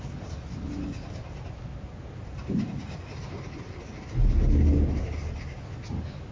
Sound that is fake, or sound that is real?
real